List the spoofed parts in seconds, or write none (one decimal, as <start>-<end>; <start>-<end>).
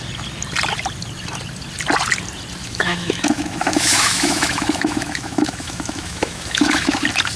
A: 2.6-7.0